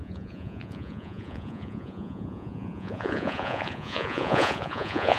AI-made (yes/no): yes